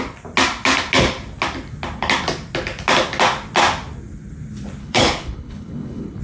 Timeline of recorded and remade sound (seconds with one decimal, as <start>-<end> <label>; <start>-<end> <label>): 0.0-4.8 recorded; 4.8-6.2 remade